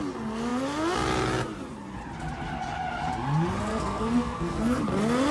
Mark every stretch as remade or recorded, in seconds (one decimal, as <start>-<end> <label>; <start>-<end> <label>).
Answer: 0.0-3.7 recorded; 3.7-4.8 remade; 4.8-5.3 recorded